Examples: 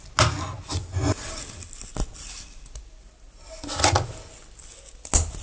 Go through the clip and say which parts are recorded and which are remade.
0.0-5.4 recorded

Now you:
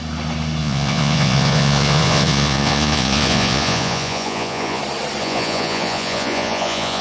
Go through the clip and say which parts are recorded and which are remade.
0.0-0.6 recorded; 0.6-4.8 remade; 4.8-5.2 recorded; 5.2-7.0 remade

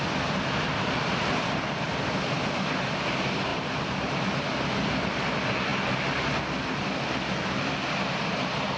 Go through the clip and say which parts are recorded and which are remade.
0.0-8.8 recorded

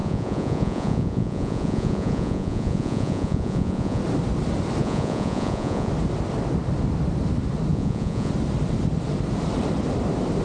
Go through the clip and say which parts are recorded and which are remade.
0.0-4.0 remade; 4.0-4.8 recorded; 4.8-5.9 remade; 5.9-7.7 recorded; 7.7-8.3 remade; 8.3-10.4 recorded